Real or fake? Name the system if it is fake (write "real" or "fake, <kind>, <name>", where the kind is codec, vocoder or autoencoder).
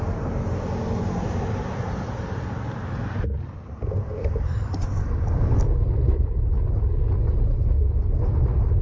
real